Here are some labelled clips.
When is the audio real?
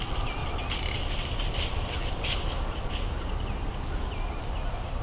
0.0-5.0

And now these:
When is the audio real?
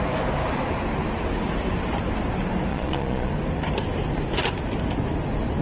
0.0-2.7; 3.3-5.6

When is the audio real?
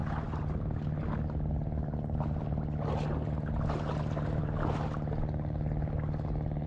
0.0-6.7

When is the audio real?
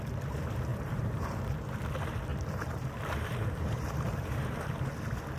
0.0-0.7; 1.4-2.3; 4.9-5.4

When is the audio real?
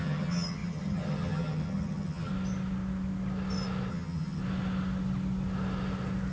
2.3-3.9; 4.4-6.3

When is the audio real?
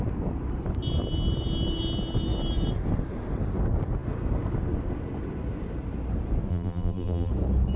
0.0-6.5; 7.3-7.8